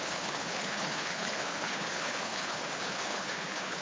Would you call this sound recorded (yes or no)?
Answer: no